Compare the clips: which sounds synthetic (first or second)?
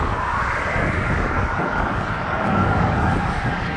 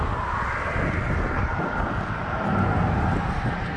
first